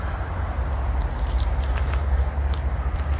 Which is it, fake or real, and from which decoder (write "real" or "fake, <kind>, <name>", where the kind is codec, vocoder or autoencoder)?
real